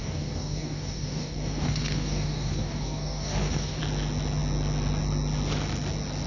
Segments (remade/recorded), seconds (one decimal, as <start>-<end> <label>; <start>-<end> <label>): 0.0-3.8 remade; 3.8-6.3 recorded